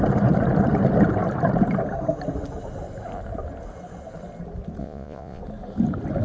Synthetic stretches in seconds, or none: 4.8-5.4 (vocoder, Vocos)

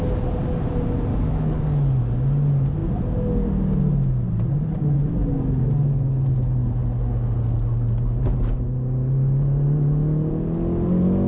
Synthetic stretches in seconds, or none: 1.1-2.0 (codec, DAC)

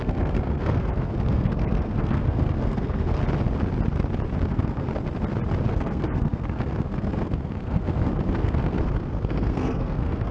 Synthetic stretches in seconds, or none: 0.0-3.2 (codec, SNAC); 4.5-4.9; 5.7-10.3

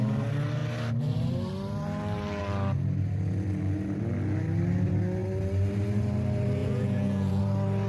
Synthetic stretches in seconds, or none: 6.6-7.4 (vocoder, Vocos)

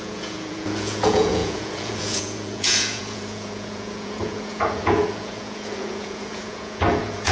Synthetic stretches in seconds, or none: 0.0-7.3 (vocoder, Vocos)

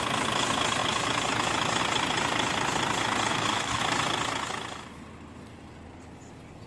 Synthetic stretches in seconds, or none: 3.3-3.8 (codec, DAC)

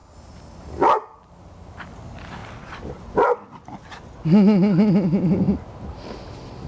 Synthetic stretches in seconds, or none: none